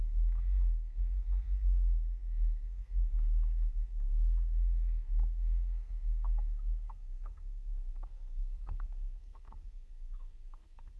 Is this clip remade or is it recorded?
remade